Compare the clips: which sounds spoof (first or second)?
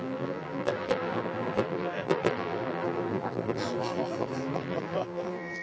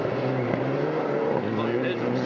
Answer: first